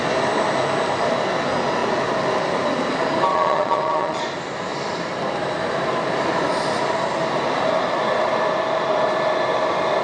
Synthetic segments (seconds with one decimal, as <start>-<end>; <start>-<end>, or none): 3.3-4.2